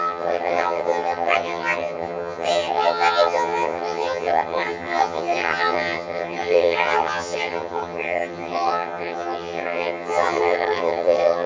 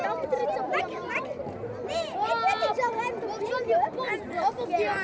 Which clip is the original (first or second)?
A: second